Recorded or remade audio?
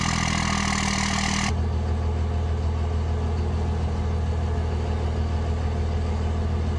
recorded